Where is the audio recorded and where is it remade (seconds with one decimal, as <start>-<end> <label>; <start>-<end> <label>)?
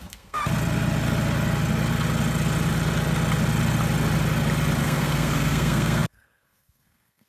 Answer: 0.0-0.4 remade; 0.4-4.8 recorded; 4.8-7.3 remade